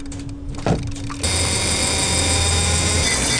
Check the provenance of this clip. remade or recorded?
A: recorded